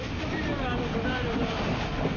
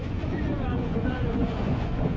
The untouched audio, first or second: first